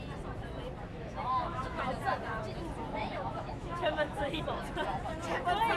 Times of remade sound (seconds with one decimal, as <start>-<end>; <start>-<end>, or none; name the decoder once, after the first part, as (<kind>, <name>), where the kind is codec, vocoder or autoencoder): 0.9-1.8 (autoencoder, DAC-VAE); 3.0-4.4